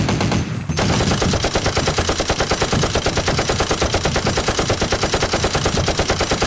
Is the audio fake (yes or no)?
no